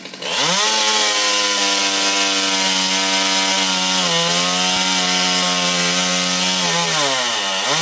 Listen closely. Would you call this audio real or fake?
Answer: real